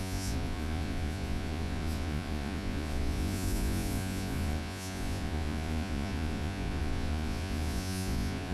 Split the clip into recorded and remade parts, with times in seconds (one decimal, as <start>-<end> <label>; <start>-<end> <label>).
0.0-8.5 remade